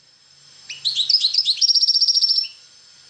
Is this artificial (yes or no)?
no